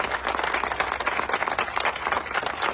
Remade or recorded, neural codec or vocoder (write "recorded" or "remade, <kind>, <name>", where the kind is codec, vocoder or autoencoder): recorded